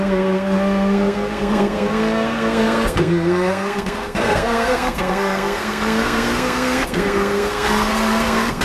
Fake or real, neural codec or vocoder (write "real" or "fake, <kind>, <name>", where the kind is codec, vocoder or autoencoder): fake, codec, SNAC